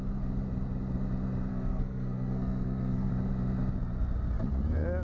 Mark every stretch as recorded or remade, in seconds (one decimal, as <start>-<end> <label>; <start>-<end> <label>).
0.0-1.5 recorded; 1.5-3.1 remade; 3.1-5.0 recorded